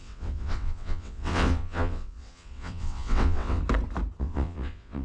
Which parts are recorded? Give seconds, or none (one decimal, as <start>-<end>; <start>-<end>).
3.6-4.2